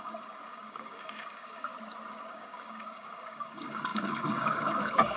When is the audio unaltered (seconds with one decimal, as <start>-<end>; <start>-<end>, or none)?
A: 1.7-2.3